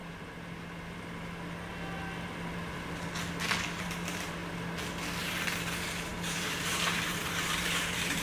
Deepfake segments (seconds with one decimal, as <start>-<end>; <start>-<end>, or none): 3.7-4.4; 5.2-8.2